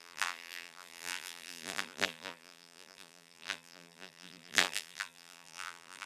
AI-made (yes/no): yes